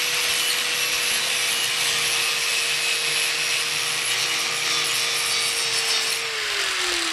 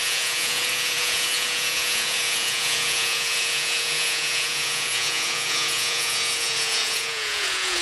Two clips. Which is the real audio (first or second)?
first